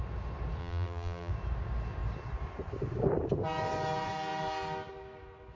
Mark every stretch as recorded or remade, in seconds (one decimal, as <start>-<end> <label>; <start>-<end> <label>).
0.0-0.6 recorded; 0.6-1.3 remade; 1.3-5.6 recorded